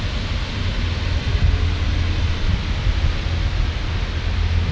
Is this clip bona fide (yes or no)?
yes